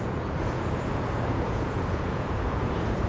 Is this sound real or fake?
fake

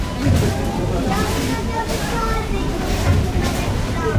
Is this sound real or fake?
fake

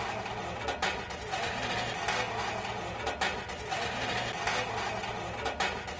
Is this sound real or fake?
real